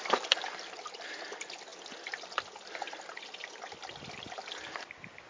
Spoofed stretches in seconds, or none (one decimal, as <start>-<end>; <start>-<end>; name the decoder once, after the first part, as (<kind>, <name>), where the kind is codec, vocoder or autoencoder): none